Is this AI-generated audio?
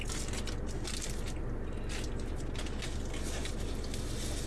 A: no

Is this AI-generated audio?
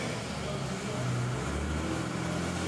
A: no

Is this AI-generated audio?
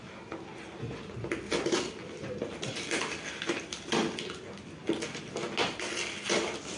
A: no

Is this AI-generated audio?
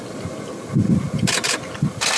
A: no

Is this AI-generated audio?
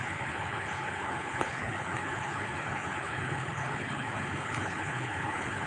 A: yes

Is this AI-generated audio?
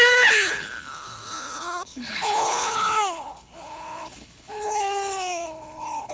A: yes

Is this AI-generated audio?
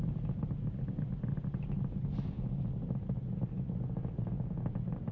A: no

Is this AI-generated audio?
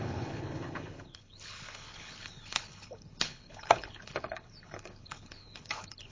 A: yes